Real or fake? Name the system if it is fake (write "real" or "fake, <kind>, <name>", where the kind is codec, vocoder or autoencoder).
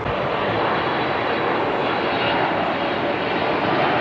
real